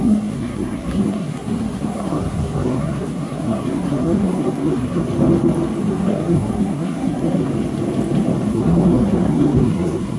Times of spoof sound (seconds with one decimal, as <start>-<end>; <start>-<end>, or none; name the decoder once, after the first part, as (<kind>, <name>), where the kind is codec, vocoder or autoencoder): 0.0-5.0 (codec, SNAC); 5.8-7.5; 8.5-10.2